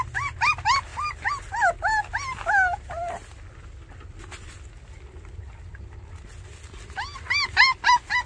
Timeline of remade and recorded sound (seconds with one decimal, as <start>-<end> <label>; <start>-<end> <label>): 0.0-8.3 recorded